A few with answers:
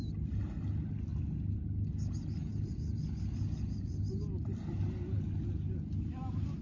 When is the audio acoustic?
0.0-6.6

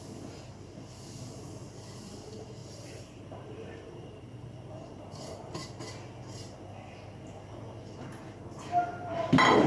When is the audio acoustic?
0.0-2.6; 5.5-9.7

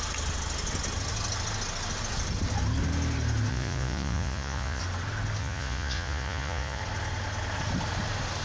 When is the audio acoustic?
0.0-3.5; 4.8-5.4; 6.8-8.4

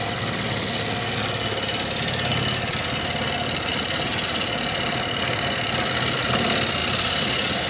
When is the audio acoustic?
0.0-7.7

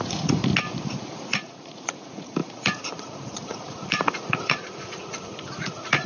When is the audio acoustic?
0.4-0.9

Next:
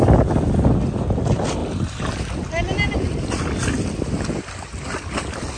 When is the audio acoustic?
0.0-5.6